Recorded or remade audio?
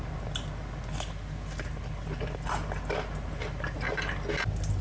recorded